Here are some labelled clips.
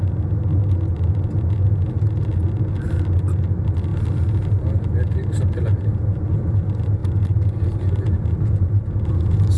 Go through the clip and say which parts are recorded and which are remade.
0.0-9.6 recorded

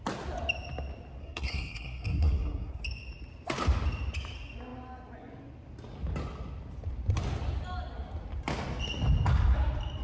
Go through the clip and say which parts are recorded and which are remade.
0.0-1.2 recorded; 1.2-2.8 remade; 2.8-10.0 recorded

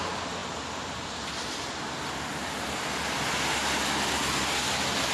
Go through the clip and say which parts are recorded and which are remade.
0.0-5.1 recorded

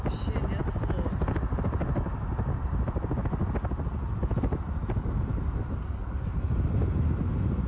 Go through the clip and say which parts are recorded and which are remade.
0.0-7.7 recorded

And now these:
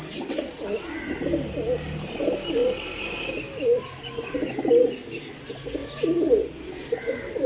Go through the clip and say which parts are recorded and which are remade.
0.0-7.5 recorded

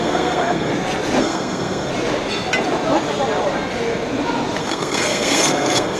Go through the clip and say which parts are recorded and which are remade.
0.0-0.7 remade; 0.7-1.2 recorded; 1.2-1.9 remade; 1.9-4.6 recorded; 4.6-6.0 remade